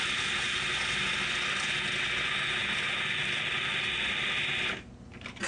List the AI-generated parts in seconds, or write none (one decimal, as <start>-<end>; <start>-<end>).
none